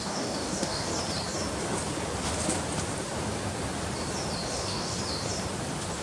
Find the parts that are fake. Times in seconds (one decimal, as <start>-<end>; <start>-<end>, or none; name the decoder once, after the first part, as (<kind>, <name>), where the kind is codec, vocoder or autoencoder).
0.0-0.9 (codec, DAC); 4.5-5.0